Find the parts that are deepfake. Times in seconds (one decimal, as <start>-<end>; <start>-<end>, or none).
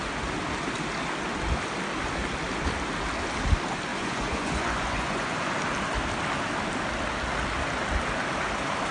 3.9-5.5